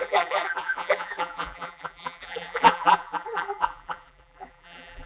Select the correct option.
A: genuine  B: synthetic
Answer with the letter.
B